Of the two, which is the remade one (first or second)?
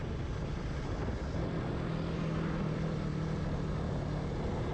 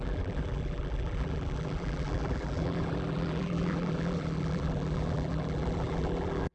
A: second